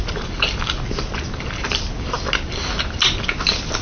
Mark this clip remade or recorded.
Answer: recorded